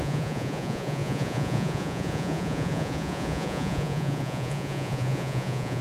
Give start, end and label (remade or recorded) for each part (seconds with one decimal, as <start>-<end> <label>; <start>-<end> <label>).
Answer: 0.0-5.8 remade